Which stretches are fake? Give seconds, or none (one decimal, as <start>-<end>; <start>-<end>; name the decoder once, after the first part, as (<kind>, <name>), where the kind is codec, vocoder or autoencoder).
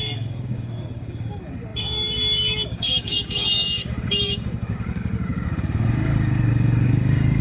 0.0-7.4 (codec, DAC)